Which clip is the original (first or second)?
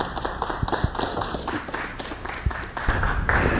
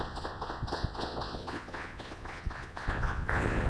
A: first